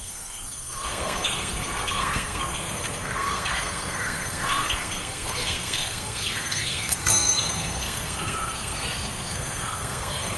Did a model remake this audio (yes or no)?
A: yes